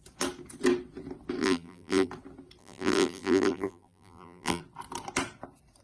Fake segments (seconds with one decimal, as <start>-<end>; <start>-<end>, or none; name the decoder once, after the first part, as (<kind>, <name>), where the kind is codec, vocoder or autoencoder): 1.4-2.1 (vocoder, BigVGAN v2); 2.6-4.6